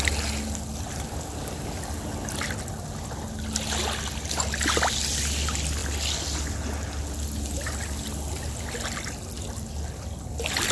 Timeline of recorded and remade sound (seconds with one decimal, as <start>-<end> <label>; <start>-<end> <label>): 0.0-10.7 recorded